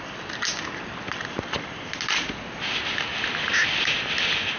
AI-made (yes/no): no